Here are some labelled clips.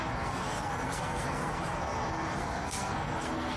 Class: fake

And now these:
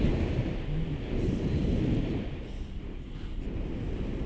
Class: real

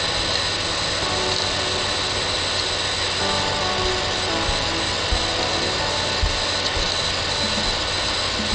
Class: real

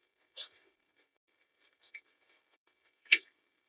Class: fake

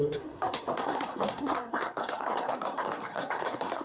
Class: fake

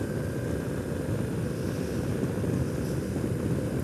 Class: real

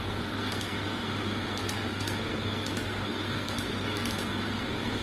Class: fake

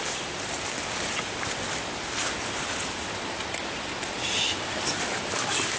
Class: real